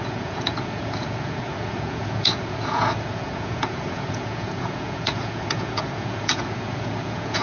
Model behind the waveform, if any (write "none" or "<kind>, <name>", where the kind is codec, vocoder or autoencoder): vocoder, Vocos